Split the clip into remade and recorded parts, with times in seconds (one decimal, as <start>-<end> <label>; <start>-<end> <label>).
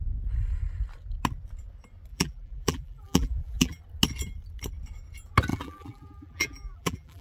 0.0-2.1 recorded; 2.1-3.8 remade; 3.8-5.5 recorded; 5.5-7.2 remade